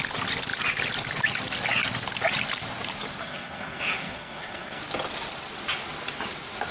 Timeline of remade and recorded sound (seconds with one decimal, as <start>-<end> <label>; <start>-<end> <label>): 0.0-3.2 recorded; 3.2-4.8 remade; 4.8-6.7 recorded